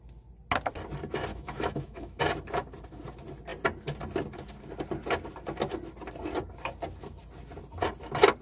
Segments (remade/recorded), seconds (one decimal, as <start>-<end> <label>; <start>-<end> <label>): 0.0-1.3 recorded; 1.3-2.2 remade; 2.2-8.4 recorded